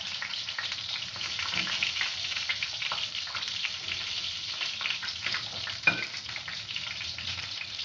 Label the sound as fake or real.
fake